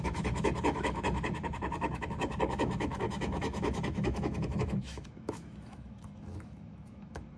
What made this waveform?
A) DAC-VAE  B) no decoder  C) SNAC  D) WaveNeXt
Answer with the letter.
A